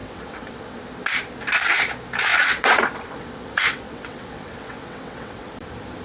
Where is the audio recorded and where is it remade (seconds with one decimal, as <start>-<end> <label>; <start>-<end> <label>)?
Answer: 0.0-0.8 remade; 0.8-2.3 recorded; 2.3-5.5 remade; 5.5-6.0 recorded